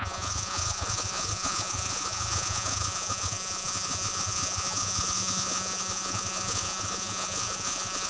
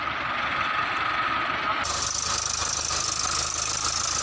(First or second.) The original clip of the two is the second